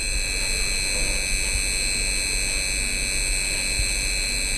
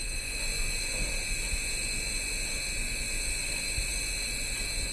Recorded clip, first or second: first